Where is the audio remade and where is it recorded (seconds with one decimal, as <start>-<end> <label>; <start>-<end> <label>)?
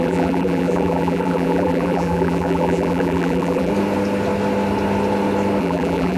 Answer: 0.0-3.7 remade; 3.7-5.6 recorded; 5.6-6.2 remade